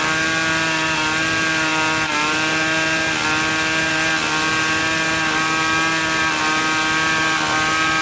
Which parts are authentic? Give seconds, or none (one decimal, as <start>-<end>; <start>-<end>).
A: 0.0-8.0